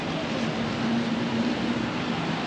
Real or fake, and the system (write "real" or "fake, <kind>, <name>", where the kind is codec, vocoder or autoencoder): real